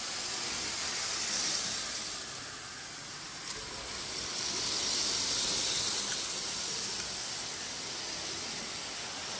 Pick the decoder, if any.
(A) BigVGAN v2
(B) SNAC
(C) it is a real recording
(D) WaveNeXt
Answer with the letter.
C